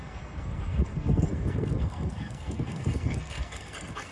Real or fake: fake